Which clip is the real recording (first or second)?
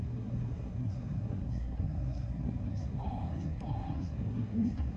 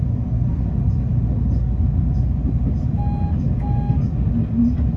second